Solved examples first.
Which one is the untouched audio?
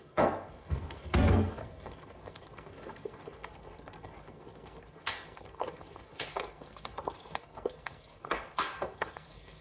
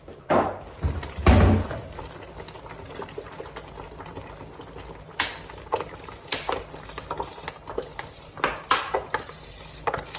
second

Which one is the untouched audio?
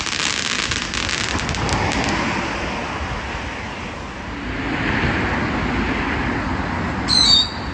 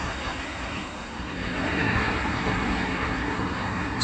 first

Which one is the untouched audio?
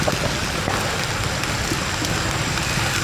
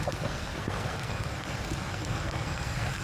first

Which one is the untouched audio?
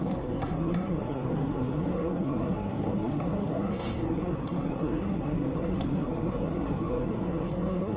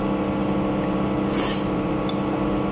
second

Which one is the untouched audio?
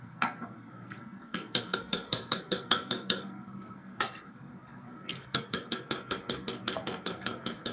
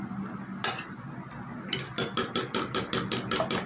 second